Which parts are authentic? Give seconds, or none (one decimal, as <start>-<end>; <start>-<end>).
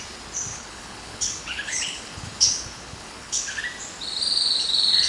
0.0-0.5; 3.6-5.1